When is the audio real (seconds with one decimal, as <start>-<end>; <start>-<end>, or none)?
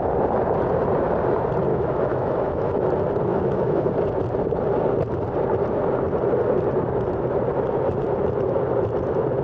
0.0-1.7; 2.9-3.3; 3.9-9.4